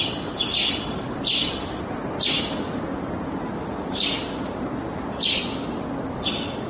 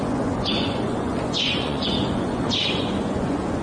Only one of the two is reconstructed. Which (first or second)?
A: second